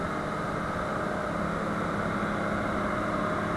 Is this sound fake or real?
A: real